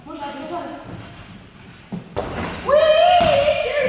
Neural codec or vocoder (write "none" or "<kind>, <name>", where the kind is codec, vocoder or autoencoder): none